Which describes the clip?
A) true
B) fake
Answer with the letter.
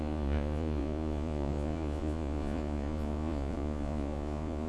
B